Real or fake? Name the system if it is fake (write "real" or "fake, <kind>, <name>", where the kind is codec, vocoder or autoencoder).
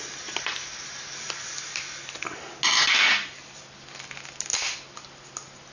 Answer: real